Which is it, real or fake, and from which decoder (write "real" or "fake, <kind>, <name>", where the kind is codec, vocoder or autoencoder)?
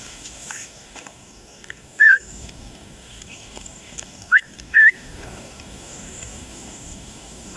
fake, codec, DAC